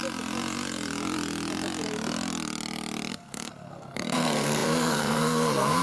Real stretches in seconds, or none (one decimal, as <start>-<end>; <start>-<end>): 0.0-3.1